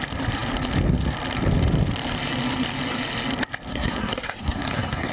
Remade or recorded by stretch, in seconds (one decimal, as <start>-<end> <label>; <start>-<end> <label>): 0.0-3.7 recorded; 3.7-5.1 remade